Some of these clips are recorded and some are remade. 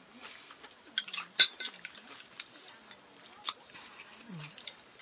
recorded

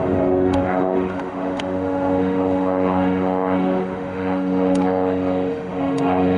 remade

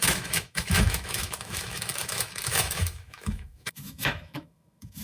remade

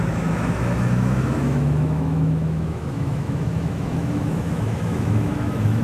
remade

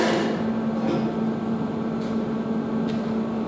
recorded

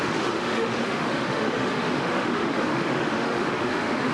remade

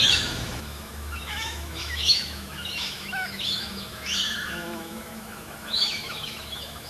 remade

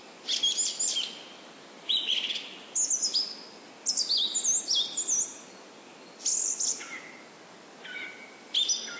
recorded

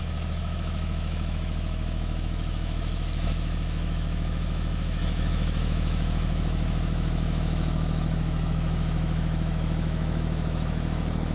remade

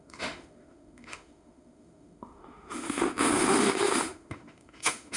remade